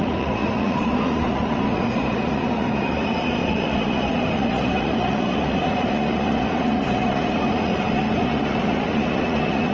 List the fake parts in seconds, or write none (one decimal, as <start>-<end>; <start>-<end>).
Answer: 0.0-9.7